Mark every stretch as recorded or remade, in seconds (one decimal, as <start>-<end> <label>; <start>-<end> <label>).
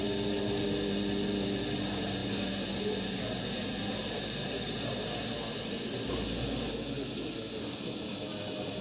0.0-8.8 recorded